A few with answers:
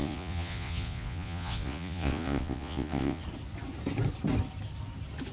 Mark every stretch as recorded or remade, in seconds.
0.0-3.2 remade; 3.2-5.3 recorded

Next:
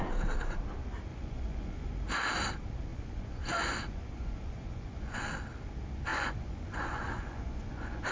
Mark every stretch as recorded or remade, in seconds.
0.0-1.1 recorded; 1.1-1.9 remade; 1.9-2.9 recorded; 2.9-5.2 remade; 5.2-6.1 recorded; 6.1-8.1 remade

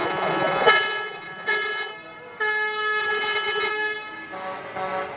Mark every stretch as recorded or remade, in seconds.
0.0-1.9 remade; 1.9-3.0 recorded; 3.0-3.7 remade; 3.7-5.2 recorded

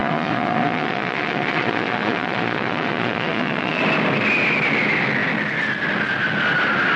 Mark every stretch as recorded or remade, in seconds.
0.0-3.8 remade; 3.8-7.0 recorded